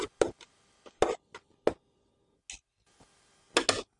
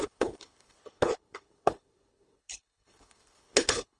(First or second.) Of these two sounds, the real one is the first